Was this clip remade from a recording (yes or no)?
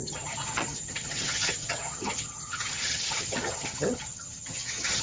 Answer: yes